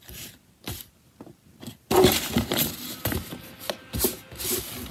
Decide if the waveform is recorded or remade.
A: recorded